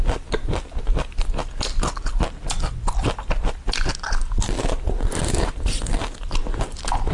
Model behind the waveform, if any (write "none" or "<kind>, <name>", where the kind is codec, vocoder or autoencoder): none